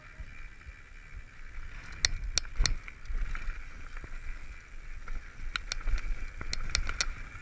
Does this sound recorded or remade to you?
recorded